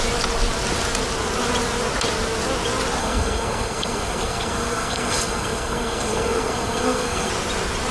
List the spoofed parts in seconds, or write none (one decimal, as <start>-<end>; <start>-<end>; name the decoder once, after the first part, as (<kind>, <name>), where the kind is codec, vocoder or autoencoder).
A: 3.0-7.3 (codec, SNAC)